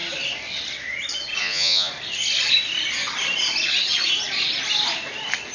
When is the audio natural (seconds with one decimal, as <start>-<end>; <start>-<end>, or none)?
0.0-1.4; 1.9-5.5